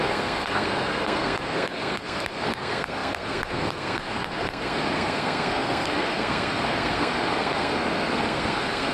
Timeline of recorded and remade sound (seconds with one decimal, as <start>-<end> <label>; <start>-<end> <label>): 0.0-8.9 remade